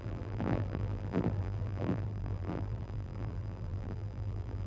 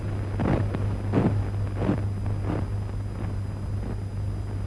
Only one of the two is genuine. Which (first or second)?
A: second